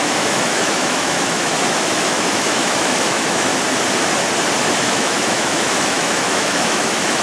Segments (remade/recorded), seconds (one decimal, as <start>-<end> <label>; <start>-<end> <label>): 0.0-3.5 remade; 3.5-4.8 recorded; 4.8-7.2 remade